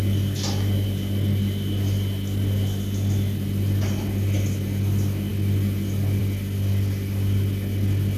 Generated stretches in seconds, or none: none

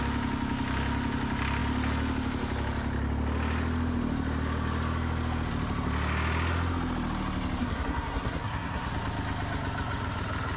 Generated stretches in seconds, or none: 7.6-8.9 (codec, SNAC)

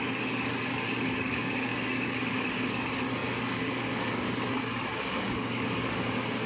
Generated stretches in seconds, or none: 0.0-6.5 (codec, DAC)

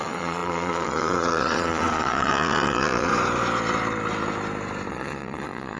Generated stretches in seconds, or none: 0.0-3.1 (vocoder, Vocos); 4.9-5.8

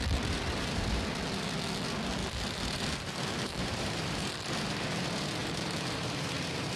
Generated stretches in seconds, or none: 2.2-5.0 (vocoder, BigVGAN v2); 5.4-6.8

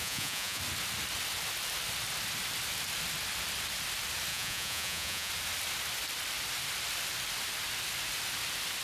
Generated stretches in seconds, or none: 0.0-0.6 (vocoder, Vocos); 4.3-5.3

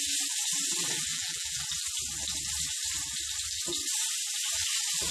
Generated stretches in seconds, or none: 1.1-1.6 (vocoder, BigVGAN v2)